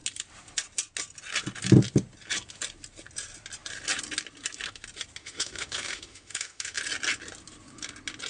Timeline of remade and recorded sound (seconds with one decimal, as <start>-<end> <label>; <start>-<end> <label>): 0.0-5.2 recorded; 5.2-6.8 remade; 6.8-8.3 recorded